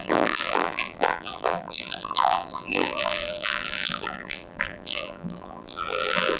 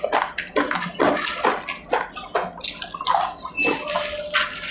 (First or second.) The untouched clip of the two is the second